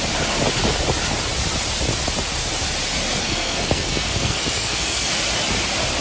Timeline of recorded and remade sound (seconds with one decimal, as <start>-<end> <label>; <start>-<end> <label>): 0.0-3.2 recorded; 3.2-5.1 remade; 5.1-6.0 recorded